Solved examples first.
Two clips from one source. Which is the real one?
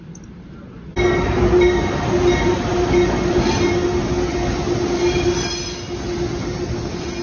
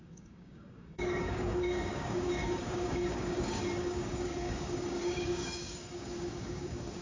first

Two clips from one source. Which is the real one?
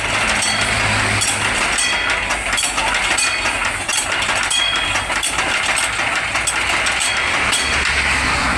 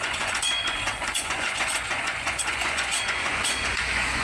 first